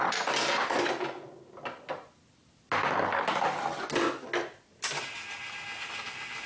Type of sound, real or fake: real